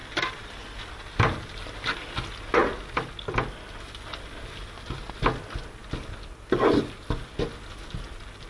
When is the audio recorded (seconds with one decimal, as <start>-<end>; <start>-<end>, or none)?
0.0-8.5